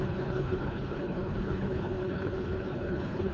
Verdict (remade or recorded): remade